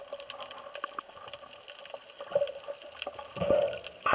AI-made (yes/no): no